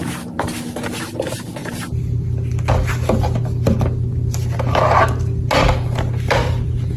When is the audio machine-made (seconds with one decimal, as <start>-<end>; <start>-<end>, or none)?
none